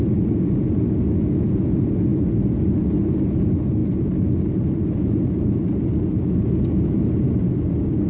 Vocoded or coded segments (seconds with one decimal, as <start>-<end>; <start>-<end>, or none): none